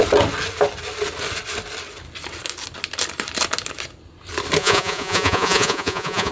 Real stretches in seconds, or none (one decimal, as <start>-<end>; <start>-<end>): 0.0-4.6